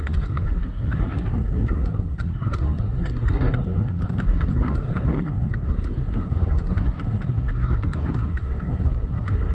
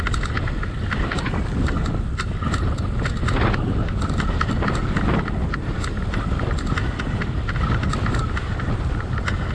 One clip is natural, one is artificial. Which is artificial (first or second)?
first